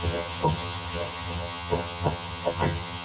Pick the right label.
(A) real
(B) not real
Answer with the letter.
B